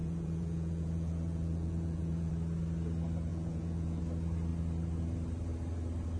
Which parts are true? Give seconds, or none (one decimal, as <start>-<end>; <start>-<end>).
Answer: 2.3-3.3; 4.0-6.2